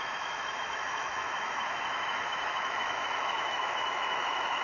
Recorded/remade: remade